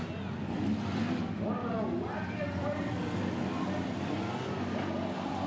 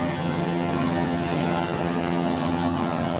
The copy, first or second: second